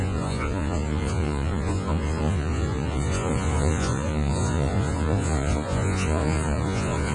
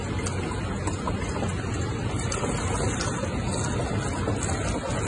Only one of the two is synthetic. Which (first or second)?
first